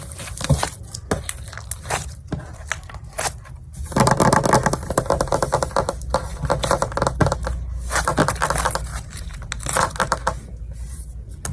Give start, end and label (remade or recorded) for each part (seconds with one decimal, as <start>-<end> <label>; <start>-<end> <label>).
0.0-8.9 recorded; 8.9-9.5 remade; 9.5-11.5 recorded

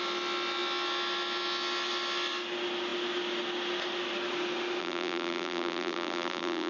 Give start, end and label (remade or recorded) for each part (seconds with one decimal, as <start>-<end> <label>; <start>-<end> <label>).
0.0-4.8 recorded; 4.8-6.7 remade

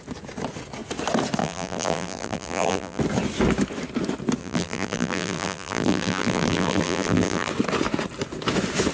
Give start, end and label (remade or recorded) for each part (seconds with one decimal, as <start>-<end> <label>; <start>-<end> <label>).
0.0-1.4 recorded; 1.4-3.0 remade; 3.0-4.4 recorded; 4.4-7.5 remade; 7.5-8.9 recorded

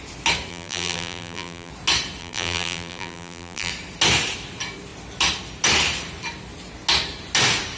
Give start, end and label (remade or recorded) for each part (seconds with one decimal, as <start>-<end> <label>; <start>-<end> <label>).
0.0-0.5 recorded; 0.5-1.7 remade; 1.7-2.2 recorded; 2.2-3.7 remade; 3.7-7.8 recorded

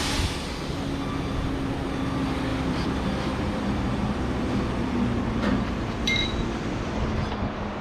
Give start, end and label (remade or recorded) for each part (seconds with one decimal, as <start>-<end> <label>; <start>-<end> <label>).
0.0-2.5 recorded; 2.5-6.9 remade; 6.9-7.8 recorded